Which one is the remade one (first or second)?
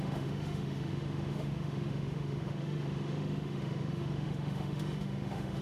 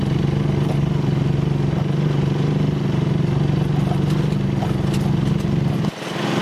first